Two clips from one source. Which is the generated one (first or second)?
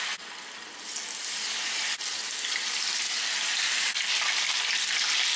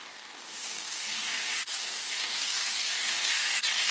second